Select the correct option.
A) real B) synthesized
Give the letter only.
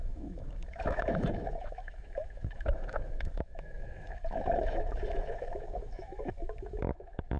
B